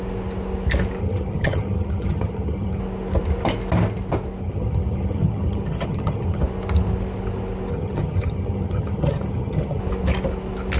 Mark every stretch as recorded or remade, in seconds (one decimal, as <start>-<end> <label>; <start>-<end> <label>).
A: 0.0-1.0 recorded; 1.0-2.8 remade; 2.8-4.4 recorded; 4.4-6.4 remade; 6.4-7.7 recorded; 7.7-9.8 remade; 9.8-10.8 recorded